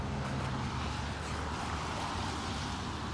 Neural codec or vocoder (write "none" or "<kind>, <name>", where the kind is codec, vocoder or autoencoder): none